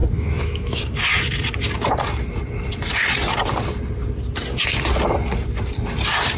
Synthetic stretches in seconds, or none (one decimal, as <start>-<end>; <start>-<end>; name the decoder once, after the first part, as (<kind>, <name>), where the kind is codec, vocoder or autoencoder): 0.0-0.8 (autoencoder, DAC-VAE)